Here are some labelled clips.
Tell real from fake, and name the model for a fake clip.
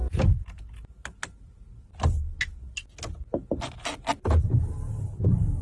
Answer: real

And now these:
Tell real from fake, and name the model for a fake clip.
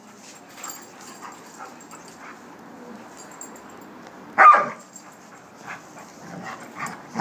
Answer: real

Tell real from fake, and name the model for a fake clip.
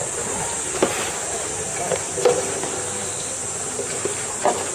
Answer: real